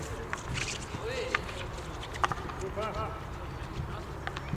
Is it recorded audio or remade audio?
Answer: recorded